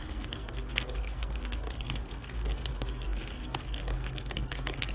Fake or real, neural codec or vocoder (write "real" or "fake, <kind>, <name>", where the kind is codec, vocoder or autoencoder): fake, codec, SNAC